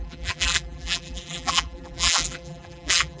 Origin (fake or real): fake